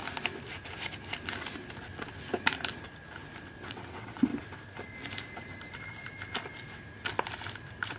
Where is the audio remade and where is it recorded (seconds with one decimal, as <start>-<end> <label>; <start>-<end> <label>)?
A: 0.0-3.5 recorded; 3.5-4.3 remade; 4.3-8.0 recorded